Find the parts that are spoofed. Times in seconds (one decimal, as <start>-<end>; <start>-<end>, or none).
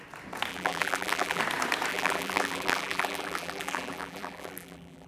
0.5-1.4; 1.9-5.1